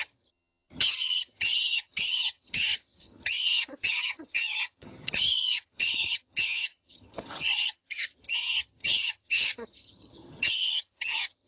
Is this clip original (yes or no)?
no